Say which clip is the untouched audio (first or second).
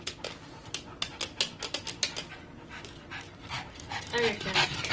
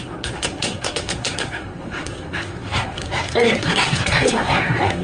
first